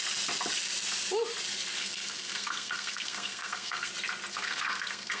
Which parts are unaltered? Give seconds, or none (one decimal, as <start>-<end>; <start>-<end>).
0.0-1.8; 3.9-4.3